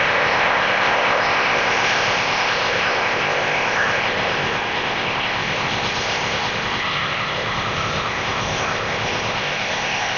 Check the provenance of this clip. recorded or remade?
remade